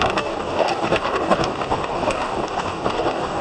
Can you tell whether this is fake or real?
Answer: fake